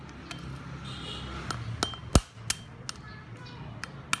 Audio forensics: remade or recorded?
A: recorded